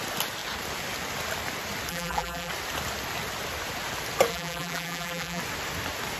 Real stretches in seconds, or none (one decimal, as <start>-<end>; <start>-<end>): 0.0-1.9; 2.5-4.3; 5.4-6.2